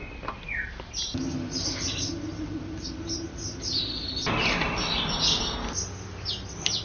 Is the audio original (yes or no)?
yes